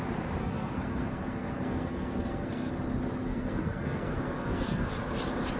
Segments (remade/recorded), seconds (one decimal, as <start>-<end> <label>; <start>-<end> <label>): 0.0-0.4 recorded; 0.4-2.7 remade; 2.7-3.2 recorded; 3.2-4.9 remade; 4.9-5.6 recorded